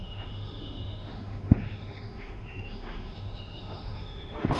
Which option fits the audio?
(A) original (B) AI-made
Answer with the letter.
B